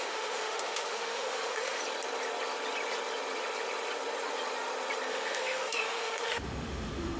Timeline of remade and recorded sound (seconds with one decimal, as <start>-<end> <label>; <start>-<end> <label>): 0.0-1.8 remade; 1.8-5.1 recorded; 5.1-7.2 remade